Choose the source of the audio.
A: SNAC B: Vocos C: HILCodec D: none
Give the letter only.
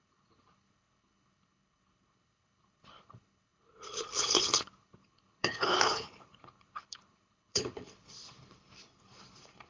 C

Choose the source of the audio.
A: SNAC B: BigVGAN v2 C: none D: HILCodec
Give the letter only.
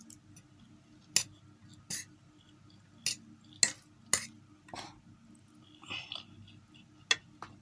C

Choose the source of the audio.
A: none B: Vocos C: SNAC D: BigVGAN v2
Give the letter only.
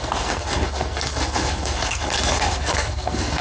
C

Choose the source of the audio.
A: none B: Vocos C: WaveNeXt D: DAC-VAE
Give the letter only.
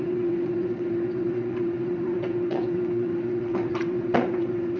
C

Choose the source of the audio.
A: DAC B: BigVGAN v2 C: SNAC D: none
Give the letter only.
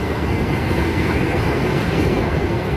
C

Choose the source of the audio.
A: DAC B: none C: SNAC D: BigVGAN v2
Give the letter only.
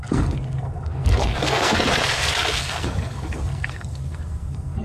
C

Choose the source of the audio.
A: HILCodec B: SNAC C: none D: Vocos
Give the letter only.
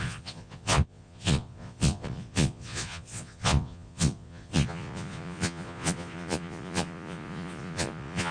D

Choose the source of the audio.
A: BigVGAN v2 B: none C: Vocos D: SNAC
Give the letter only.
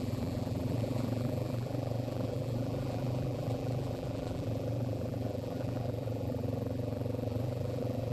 A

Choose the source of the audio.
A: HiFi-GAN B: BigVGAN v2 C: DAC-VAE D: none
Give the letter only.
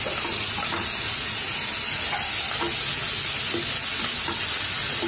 D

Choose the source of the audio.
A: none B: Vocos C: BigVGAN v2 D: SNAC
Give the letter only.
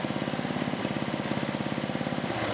A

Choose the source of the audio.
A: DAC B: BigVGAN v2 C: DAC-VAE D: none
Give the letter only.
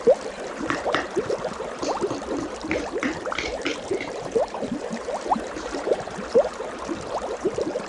B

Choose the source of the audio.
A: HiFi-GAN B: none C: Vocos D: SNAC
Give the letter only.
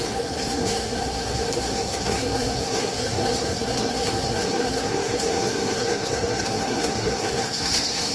D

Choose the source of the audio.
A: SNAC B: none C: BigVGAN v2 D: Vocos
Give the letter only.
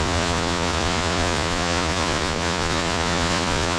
D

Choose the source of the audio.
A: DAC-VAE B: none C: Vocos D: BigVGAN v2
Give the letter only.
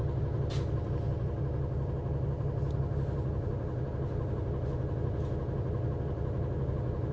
B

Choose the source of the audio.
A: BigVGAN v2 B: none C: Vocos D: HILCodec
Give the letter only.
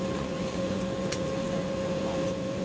C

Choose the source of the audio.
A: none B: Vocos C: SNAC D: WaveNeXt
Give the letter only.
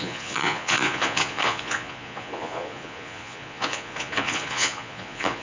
B